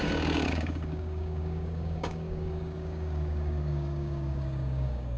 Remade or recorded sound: remade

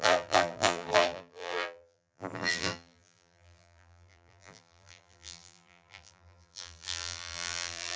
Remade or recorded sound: remade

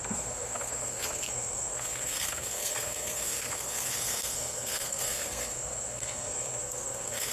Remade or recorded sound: remade